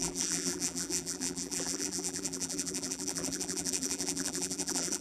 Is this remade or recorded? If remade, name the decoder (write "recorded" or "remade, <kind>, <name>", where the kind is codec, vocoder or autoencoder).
remade, vocoder, BigVGAN v2